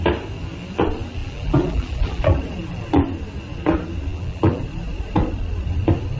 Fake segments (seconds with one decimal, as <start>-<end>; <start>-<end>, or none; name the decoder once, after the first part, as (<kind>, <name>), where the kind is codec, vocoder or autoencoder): 1.2-2.4 (vocoder, BigVGAN v2); 4.1-4.6